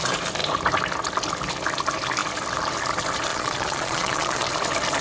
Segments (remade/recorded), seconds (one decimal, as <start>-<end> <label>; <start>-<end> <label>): 0.0-3.3 recorded; 3.3-4.5 remade; 4.5-5.0 recorded